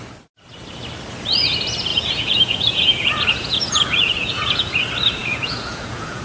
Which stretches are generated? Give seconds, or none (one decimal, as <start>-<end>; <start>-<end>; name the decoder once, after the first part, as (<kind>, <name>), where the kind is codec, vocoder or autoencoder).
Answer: 1.9-4.8 (vocoder, Vocos); 5.2-6.2